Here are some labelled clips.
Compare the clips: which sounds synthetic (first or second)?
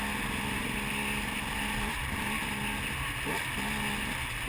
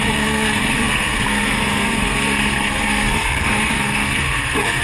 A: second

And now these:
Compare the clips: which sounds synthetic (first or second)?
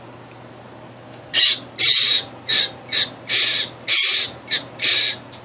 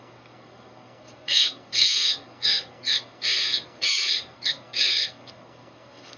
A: second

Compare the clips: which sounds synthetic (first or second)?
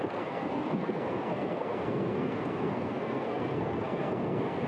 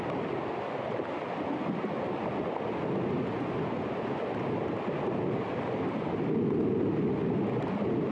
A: first